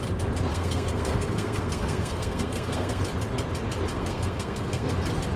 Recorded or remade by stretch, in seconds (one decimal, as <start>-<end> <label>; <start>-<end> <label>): 0.0-0.5 recorded; 0.5-3.0 remade; 3.0-3.9 recorded; 3.9-4.9 remade; 4.9-5.4 recorded